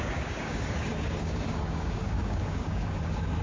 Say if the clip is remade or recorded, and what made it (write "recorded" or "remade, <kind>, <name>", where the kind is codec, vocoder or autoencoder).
remade, codec, DAC